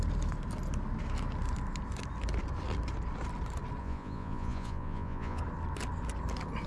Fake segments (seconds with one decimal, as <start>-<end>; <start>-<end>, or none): 3.8-5.4